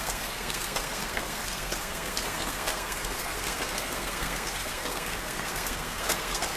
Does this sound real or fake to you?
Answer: fake